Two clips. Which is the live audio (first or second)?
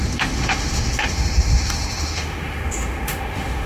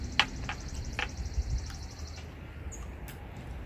second